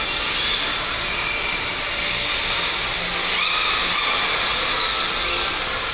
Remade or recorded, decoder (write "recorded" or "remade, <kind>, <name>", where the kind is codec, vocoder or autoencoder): recorded